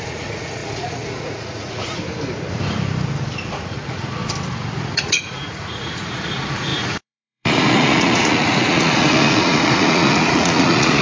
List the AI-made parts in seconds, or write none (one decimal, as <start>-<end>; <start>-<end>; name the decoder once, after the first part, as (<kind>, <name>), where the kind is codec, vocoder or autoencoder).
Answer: 0.0-2.0 (vocoder, Vocos); 3.4-4.2; 4.8-11.0